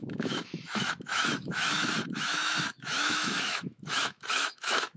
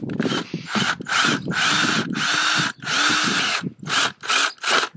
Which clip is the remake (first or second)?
first